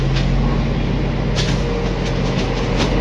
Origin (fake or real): real